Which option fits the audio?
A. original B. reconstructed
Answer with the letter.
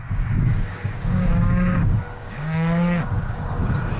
B